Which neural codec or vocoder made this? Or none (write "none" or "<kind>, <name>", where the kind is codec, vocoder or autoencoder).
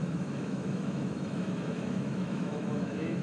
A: autoencoder, DAC-VAE